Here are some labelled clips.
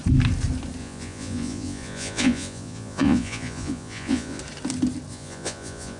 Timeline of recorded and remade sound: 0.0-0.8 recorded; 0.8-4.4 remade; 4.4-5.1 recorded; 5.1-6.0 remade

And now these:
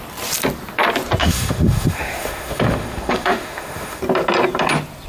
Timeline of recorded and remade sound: 0.0-1.2 recorded; 1.2-4.0 remade; 4.0-5.1 recorded

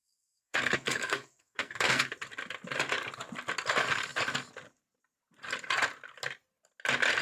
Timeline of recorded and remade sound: 0.0-2.1 remade; 2.1-7.2 recorded

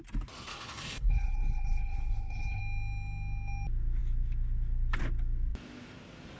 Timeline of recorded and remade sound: 0.0-0.5 recorded; 0.5-2.6 remade; 2.6-6.4 recorded